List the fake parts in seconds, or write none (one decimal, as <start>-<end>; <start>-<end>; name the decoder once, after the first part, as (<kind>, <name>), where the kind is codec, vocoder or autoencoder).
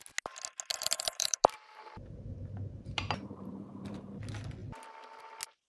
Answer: 0.7-4.1 (vocoder, BigVGAN v2)